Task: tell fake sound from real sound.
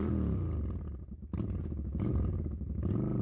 real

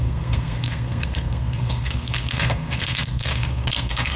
fake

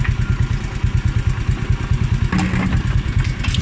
real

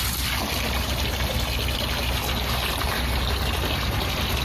real